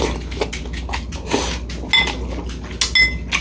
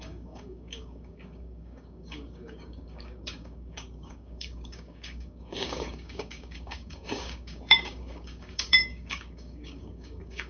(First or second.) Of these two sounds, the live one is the first